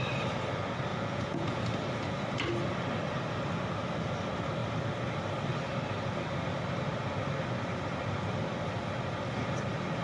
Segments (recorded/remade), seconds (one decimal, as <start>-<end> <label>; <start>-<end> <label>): 0.0-0.9 recorded; 0.9-1.6 remade; 1.6-10.0 recorded